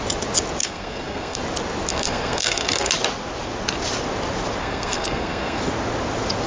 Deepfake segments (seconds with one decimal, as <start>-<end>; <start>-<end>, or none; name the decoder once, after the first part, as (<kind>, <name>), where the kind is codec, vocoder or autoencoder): 0.6-1.4 (codec, SNAC); 1.9-2.9; 4.6-5.6